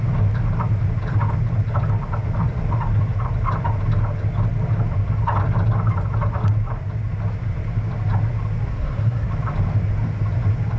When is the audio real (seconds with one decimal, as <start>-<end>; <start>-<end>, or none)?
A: 0.0-8.7; 9.3-10.8